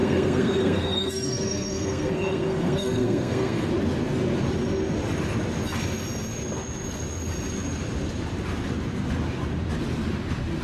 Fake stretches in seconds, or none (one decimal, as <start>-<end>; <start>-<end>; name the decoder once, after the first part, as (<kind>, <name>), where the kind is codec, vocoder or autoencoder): 0.0-3.7 (codec, SNAC)